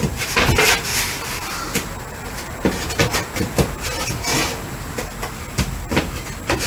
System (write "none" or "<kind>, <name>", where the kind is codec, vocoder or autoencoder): none